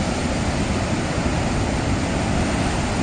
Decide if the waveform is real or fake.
real